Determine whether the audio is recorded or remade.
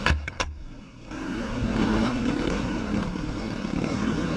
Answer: remade